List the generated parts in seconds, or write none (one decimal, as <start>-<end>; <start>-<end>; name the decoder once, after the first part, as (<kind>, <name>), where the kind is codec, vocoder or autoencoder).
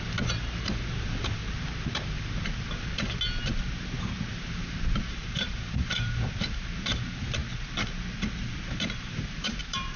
0.0-1.4 (vocoder, BigVGAN v2); 4.3-7.4; 8.4-10.0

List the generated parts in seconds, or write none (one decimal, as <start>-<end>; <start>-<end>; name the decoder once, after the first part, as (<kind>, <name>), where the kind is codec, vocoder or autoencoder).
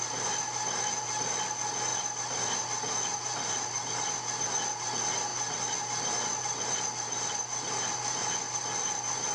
none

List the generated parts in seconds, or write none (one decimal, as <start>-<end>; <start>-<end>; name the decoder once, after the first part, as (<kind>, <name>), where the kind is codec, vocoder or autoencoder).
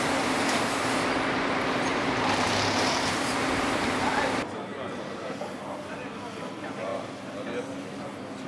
1.9-3.9 (vocoder, BigVGAN v2)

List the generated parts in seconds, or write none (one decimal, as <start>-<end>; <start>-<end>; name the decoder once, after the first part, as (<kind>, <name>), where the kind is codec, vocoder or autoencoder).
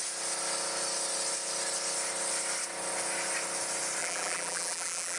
4.0-5.2 (vocoder, BigVGAN v2)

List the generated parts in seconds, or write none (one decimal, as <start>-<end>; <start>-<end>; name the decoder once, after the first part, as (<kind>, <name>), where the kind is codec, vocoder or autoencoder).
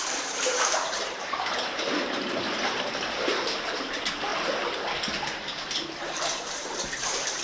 0.0-4.3 (vocoder, BigVGAN v2); 5.1-7.4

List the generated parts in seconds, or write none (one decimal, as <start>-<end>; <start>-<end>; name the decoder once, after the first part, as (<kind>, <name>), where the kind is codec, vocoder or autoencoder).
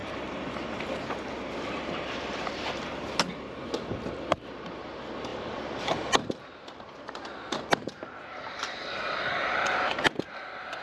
0.0-2.5 (vocoder, BigVGAN v2); 5.3-9.9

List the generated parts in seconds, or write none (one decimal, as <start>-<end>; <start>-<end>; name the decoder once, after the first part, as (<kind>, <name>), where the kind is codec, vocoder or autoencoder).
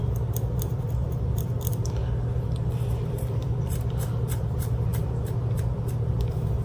0.0-2.0 (vocoder, BigVGAN v2); 2.9-6.6